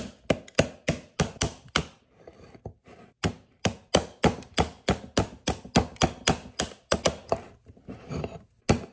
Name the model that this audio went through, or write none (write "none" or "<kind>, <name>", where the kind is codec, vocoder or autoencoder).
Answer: none